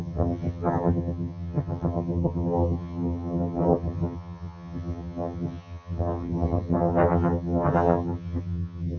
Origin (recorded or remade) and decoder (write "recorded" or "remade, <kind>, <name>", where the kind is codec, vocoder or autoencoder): remade, vocoder, HiFi-GAN